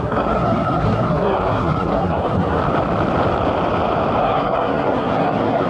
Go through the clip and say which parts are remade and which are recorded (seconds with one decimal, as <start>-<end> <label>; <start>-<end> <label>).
0.0-2.6 remade; 2.6-4.2 recorded; 4.2-5.7 remade